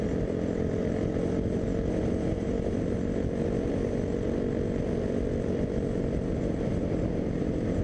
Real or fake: real